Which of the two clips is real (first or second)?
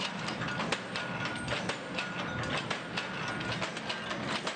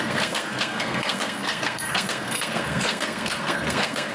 first